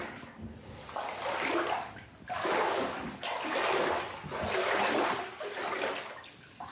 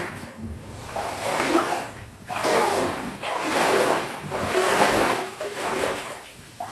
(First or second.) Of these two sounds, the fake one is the second